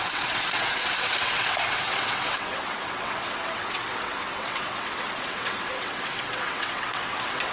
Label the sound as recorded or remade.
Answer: remade